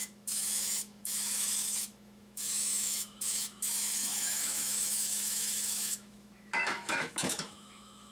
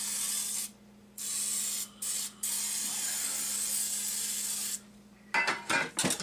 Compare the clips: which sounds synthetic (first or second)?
first